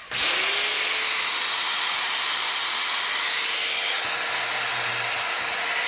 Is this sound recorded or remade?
recorded